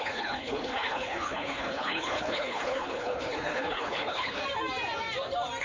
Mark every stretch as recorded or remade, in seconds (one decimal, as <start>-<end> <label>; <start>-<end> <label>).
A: 0.0-4.4 remade; 4.4-5.6 recorded

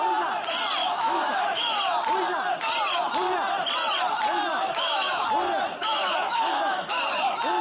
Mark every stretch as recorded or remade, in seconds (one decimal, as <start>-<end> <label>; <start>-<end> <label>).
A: 0.0-0.8 recorded; 0.8-1.8 remade; 1.8-4.5 recorded; 4.5-5.2 remade; 5.2-5.8 recorded; 5.8-6.9 remade; 6.9-7.6 recorded

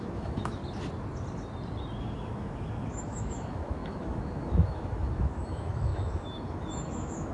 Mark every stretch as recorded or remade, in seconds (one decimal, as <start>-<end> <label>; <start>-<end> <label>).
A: 0.0-0.6 remade; 0.6-2.0 recorded; 2.0-7.3 remade

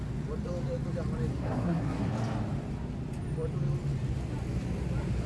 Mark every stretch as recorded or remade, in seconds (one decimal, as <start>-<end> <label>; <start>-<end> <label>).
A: 0.0-1.3 recorded; 1.3-2.1 remade; 2.1-5.3 recorded

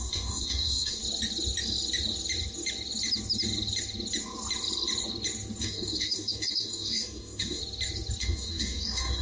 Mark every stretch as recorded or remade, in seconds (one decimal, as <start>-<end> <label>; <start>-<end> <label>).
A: 0.0-1.0 remade; 1.0-5.6 recorded; 5.6-7.6 remade; 7.6-8.2 recorded; 8.2-9.2 remade

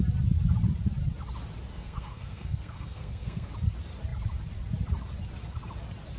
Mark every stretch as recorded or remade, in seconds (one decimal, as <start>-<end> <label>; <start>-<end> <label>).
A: 0.0-1.7 recorded; 1.7-3.5 remade; 3.5-6.2 recorded

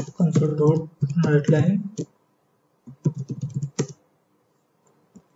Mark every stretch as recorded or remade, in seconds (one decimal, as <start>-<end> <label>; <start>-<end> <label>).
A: 0.0-5.4 remade

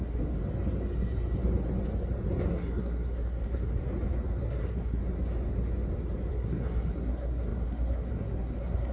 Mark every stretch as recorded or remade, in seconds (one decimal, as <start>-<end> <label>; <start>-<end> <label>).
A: 0.0-0.4 remade; 0.4-2.5 recorded; 2.5-3.8 remade; 3.8-4.4 recorded; 4.4-5.0 remade; 5.0-6.3 recorded; 6.3-8.9 remade